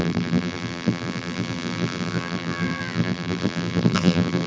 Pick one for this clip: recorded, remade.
remade